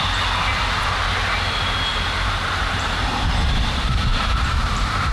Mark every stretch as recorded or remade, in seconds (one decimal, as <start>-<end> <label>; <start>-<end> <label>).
0.0-1.9 recorded; 1.9-3.3 remade; 3.3-4.1 recorded; 4.1-5.1 remade